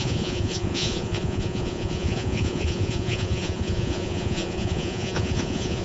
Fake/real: fake